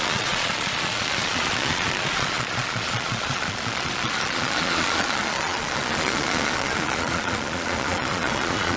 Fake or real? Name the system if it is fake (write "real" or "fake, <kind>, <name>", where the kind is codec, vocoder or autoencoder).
fake, vocoder, Vocos